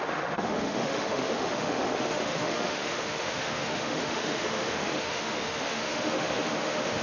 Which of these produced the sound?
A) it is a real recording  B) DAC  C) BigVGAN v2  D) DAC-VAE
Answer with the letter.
D